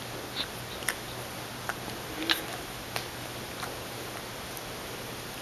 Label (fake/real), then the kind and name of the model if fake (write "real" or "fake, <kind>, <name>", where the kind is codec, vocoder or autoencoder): real